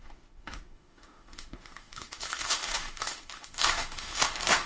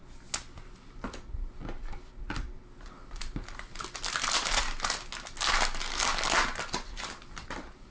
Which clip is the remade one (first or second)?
first